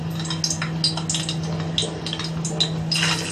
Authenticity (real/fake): real